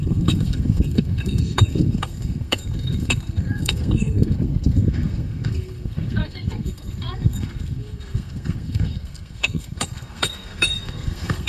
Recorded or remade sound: remade